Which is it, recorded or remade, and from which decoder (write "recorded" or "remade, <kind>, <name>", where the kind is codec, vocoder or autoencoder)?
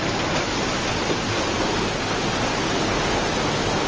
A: recorded